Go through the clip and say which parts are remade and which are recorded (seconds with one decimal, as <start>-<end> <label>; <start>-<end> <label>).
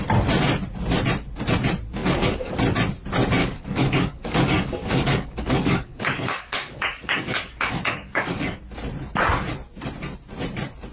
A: 0.0-2.0 recorded; 2.0-2.5 remade; 2.5-3.4 recorded; 3.4-8.6 remade; 8.6-10.9 recorded